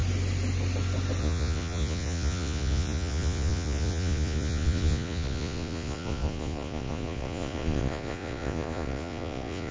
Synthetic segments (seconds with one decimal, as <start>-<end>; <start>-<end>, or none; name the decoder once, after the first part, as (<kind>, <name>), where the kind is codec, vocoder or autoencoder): 1.2-9.7 (vocoder, Vocos)